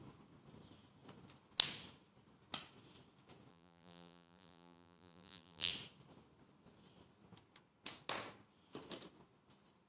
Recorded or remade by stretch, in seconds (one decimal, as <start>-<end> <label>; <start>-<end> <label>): 0.0-3.5 recorded; 3.5-5.7 remade; 5.7-9.9 recorded